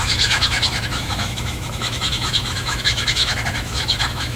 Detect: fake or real fake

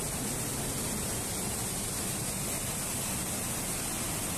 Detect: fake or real real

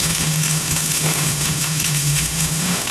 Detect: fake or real fake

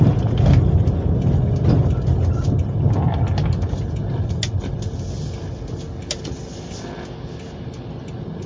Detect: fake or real real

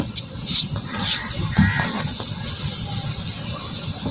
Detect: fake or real real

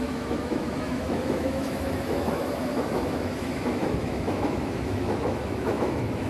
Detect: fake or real fake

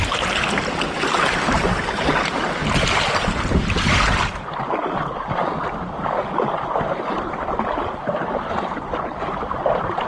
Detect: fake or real real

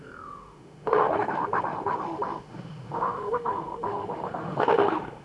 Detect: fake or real fake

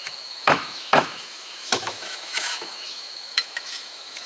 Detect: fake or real fake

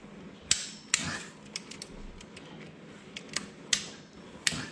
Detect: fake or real real